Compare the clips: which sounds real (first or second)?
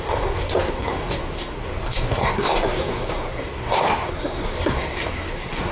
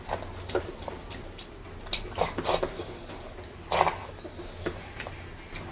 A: second